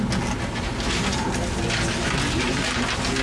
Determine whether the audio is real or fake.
real